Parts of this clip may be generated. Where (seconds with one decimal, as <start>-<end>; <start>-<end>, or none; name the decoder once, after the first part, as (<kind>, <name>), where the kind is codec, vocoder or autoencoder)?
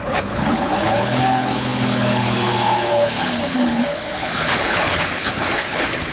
0.0-6.1 (codec, HILCodec)